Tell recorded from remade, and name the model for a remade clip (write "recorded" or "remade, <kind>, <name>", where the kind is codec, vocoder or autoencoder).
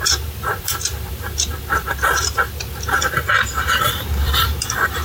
remade, vocoder, BigVGAN v2